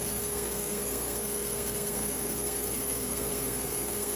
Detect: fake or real fake